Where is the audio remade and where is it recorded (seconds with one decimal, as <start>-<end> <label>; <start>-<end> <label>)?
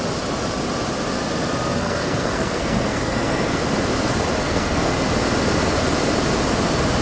0.0-1.8 recorded; 1.8-3.6 remade; 3.6-4.4 recorded; 4.4-4.9 remade; 4.9-7.0 recorded